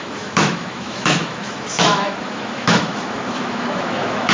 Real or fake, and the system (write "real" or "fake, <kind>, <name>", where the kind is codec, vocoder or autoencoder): fake, autoencoder, DAC-VAE